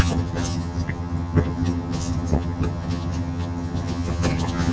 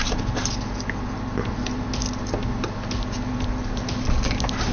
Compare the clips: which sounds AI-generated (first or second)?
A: first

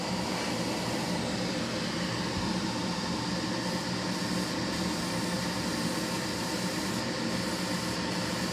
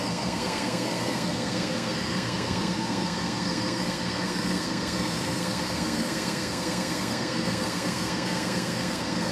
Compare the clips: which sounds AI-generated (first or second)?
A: second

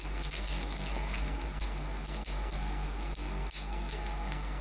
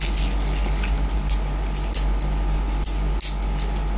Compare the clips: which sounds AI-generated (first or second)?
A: first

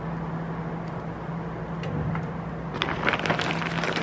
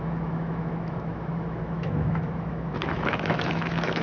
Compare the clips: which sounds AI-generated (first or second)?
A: second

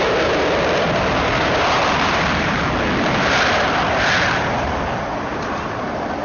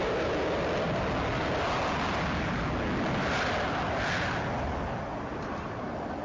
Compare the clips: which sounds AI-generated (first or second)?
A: first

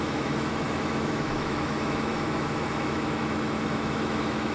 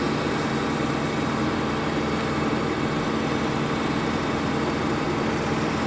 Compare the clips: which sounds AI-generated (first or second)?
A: first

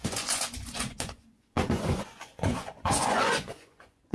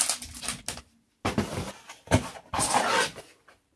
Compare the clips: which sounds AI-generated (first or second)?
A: first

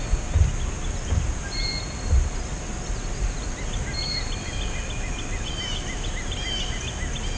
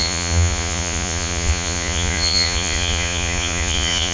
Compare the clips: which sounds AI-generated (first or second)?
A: second